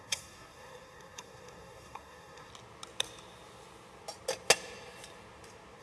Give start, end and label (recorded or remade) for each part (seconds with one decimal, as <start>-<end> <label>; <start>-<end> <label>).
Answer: 0.0-2.5 remade; 2.5-5.8 recorded